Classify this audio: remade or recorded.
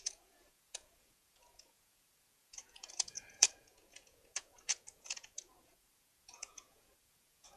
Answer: remade